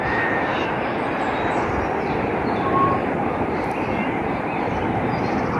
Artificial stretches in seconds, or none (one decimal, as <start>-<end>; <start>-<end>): none